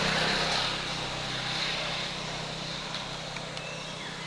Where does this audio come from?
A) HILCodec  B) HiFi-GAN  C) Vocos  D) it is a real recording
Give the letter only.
D